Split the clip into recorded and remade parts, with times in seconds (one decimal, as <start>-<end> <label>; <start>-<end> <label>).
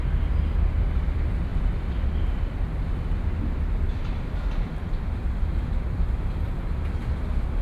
0.0-7.6 remade